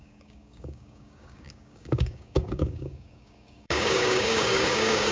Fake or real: fake